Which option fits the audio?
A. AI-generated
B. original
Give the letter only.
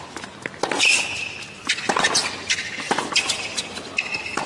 B